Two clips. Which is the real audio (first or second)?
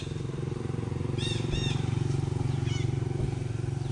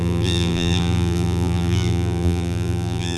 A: first